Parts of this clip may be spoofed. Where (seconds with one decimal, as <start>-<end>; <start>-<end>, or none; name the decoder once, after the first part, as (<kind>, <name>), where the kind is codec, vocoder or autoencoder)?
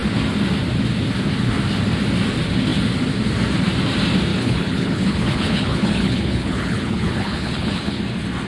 4.3-8.0 (codec, HILCodec)